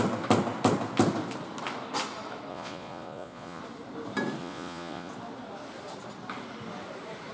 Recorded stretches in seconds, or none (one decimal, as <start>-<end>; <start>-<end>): 0.0-2.5; 3.6-4.4; 5.1-7.3